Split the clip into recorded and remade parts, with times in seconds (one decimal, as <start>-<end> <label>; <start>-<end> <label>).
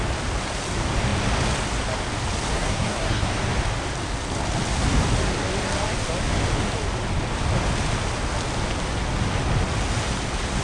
0.0-2.5 recorded; 2.5-3.3 remade; 3.3-10.6 recorded